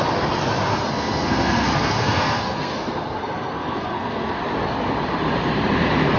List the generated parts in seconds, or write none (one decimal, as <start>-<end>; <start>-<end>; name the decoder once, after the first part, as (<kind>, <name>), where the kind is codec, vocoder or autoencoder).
0.7-4.4 (codec, SNAC)